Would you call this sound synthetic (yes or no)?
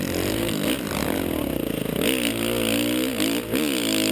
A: no